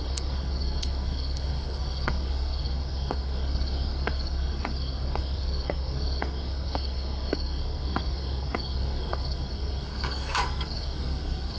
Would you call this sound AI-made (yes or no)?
yes